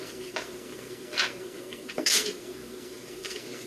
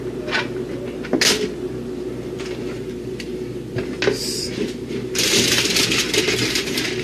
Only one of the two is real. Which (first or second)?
second